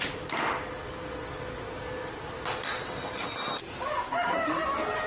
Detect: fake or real real